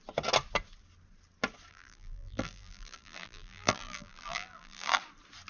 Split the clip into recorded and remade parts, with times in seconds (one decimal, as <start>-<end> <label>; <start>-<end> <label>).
0.0-1.7 recorded; 1.7-5.0 remade; 5.0-5.5 recorded